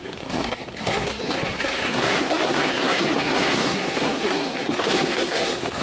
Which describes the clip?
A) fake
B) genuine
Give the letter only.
A